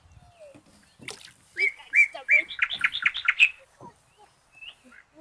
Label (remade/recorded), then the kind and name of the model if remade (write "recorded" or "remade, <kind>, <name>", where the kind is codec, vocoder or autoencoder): recorded